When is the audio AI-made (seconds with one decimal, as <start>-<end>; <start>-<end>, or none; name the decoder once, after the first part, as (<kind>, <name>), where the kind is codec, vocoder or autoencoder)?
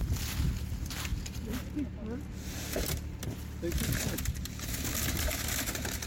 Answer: none